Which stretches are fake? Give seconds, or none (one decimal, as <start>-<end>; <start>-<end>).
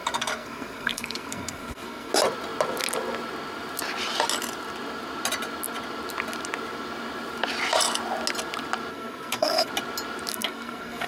0.0-2.1; 8.9-9.7; 10.3-11.1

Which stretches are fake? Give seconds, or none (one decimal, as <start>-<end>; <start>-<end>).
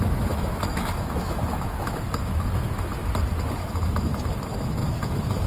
0.0-3.0; 3.5-5.5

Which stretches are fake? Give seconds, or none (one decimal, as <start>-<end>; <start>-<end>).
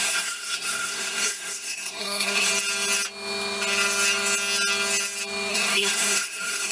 0.0-2.5; 5.5-6.7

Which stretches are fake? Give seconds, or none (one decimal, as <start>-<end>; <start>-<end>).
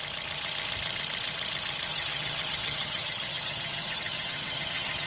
1.9-5.1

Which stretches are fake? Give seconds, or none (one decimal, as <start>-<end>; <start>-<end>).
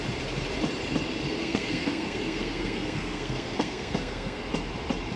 1.4-4.5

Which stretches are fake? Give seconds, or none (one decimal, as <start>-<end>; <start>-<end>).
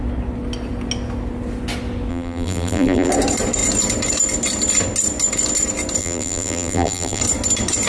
2.1-3.1; 6.0-7.2